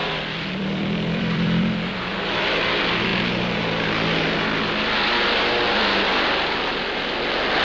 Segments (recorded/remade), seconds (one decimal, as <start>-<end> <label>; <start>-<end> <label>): 0.0-2.5 remade; 2.5-7.6 recorded